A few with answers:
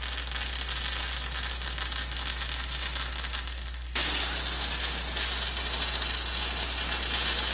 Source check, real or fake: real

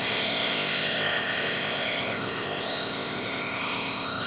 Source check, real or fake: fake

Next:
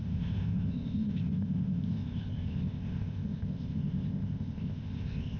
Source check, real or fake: fake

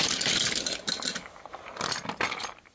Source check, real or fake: real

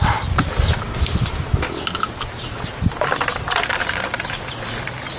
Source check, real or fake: real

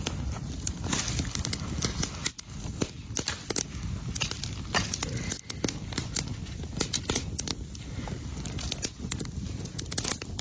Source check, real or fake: real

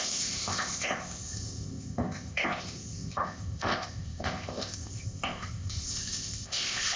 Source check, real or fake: fake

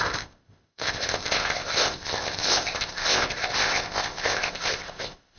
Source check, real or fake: fake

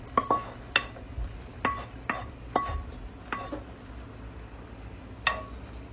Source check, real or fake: real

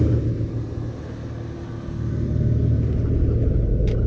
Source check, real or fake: real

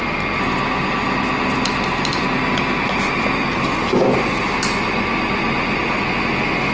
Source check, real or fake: real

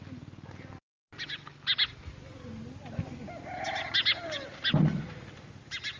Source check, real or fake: real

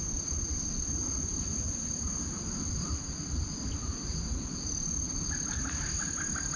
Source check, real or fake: real